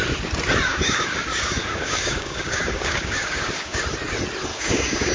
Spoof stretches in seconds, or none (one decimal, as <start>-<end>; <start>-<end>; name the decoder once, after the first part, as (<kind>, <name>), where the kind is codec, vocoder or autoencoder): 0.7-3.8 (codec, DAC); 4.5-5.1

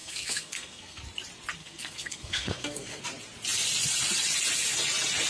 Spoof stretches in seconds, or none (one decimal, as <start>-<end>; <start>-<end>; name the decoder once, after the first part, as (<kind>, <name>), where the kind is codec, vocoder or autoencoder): 0.0-1.0 (codec, SNAC); 1.6-3.0

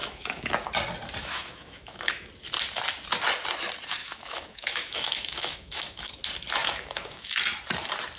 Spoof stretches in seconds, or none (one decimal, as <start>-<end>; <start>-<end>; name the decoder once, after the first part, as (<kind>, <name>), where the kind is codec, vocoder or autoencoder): 0.0-0.5 (autoencoder, DAC-VAE); 1.2-2.3; 4.0-6.1; 6.6-7.4

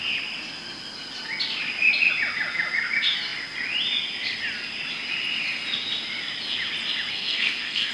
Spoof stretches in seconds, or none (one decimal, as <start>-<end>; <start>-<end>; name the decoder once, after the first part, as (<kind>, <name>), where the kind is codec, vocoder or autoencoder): 7.1-7.9 (codec, SNAC)

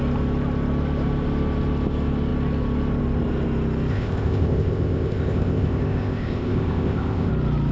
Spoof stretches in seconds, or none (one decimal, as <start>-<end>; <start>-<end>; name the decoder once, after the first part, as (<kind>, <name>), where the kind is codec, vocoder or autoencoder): 3.9-7.3 (codec, ZipCodec)

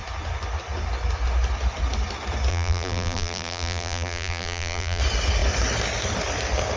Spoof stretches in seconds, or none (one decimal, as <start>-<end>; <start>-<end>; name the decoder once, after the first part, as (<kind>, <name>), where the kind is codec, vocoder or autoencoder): 2.5-5.0 (vocoder, BigVGAN v2)

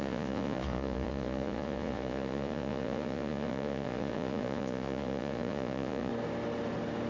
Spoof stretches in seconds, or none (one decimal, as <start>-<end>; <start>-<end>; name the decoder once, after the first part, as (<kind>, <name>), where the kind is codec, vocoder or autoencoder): 0.0-6.1 (vocoder, Vocos)

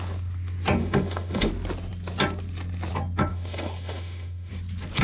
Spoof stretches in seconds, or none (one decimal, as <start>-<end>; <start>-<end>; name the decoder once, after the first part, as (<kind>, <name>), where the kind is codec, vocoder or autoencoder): 0.8-1.5 (autoencoder, DAC-VAE); 3.3-4.5